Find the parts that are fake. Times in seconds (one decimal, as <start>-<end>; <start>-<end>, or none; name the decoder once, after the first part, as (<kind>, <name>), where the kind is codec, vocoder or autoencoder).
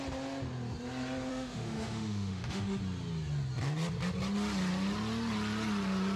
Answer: 1.3-2.8 (autoencoder, DAC-VAE)